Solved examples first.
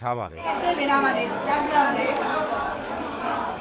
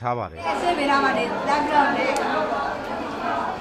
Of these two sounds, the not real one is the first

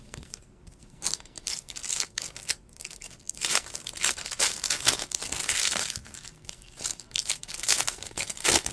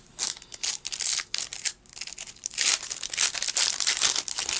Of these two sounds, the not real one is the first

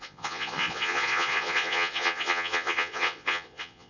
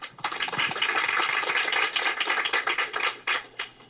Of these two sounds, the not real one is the first